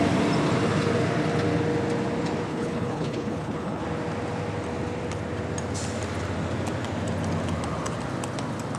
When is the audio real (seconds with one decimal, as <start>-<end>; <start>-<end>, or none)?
0.0-2.5; 3.8-8.8